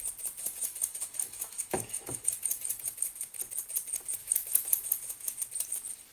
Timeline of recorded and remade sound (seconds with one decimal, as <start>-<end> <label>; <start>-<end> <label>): 0.0-0.4 recorded; 0.4-3.4 remade; 3.4-4.2 recorded; 4.2-5.4 remade; 5.4-6.1 recorded